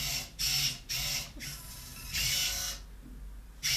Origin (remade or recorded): recorded